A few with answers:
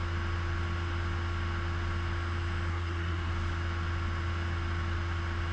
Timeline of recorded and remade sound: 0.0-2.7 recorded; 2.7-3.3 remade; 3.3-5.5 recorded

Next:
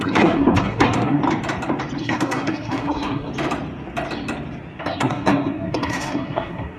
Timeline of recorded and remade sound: 0.0-1.2 remade; 1.2-2.0 recorded; 2.0-3.3 remade; 3.3-4.8 recorded; 4.8-6.8 remade

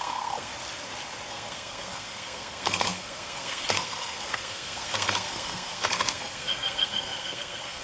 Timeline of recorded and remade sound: 0.0-0.5 remade; 0.5-1.3 recorded; 1.3-7.8 remade